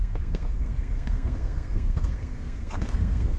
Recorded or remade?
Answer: remade